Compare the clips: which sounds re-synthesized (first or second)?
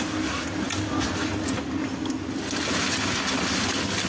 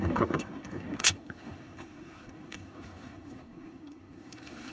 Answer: second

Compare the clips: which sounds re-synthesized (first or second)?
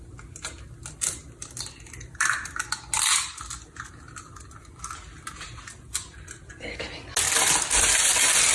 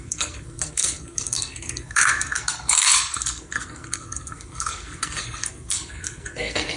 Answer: second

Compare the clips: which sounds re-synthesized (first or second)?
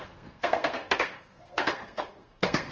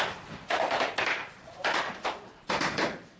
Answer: first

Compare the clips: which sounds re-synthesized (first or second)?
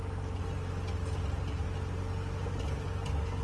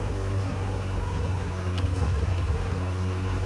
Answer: second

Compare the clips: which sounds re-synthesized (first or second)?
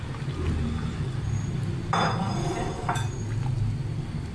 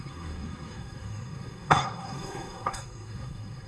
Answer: second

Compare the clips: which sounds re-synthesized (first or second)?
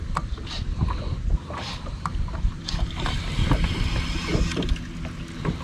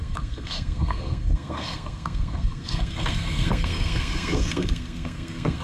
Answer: second